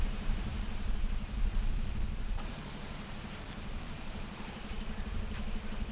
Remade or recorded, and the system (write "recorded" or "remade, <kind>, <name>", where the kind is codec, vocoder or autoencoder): remade, vocoder, BigVGAN v2